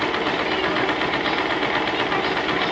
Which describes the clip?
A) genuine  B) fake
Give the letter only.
A